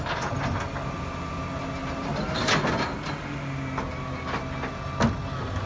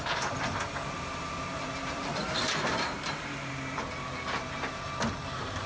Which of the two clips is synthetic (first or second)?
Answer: second